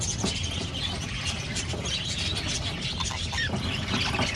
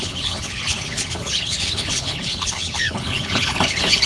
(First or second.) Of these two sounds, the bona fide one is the first